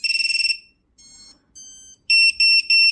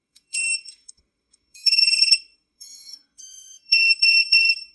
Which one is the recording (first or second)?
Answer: first